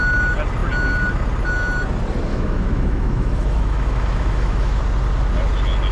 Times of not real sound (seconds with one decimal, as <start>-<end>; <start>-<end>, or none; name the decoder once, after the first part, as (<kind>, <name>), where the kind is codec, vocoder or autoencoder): 2.3-4.8 (autoencoder, DAC-VAE)